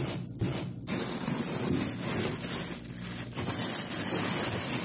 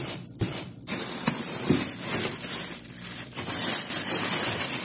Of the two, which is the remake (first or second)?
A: second